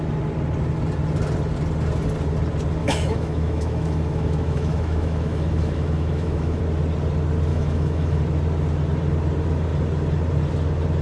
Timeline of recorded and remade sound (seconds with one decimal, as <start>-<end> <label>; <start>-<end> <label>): 0.0-2.8 recorded; 2.8-6.6 remade; 6.6-7.5 recorded; 7.5-8.2 remade; 8.2-11.0 recorded